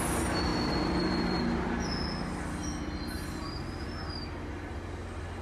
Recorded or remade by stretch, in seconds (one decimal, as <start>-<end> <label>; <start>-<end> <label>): 0.0-0.5 recorded; 0.5-1.4 remade; 1.4-5.4 recorded